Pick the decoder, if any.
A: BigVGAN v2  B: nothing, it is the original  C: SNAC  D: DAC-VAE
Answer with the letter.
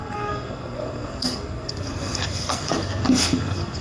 C